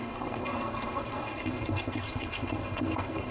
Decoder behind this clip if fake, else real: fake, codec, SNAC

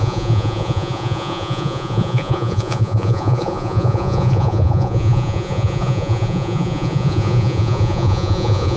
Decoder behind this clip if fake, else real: fake, vocoder, Vocos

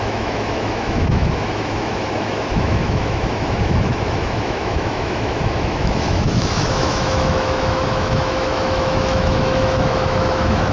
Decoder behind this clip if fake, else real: fake, autoencoder, DAC-VAE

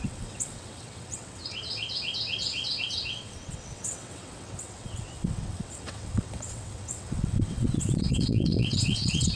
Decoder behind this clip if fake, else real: fake, vocoder, WaveNeXt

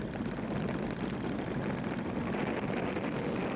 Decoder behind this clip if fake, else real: real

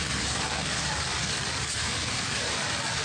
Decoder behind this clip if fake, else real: fake, codec, DAC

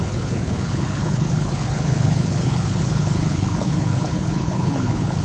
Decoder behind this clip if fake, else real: fake, codec, HILCodec